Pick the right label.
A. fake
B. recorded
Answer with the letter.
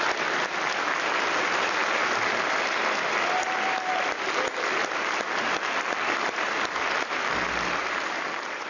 B